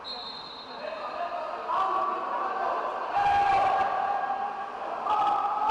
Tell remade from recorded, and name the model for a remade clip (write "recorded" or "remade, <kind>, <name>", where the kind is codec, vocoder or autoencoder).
recorded